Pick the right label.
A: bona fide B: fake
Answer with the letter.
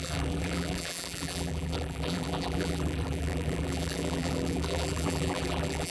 B